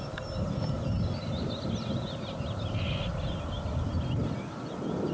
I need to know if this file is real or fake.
real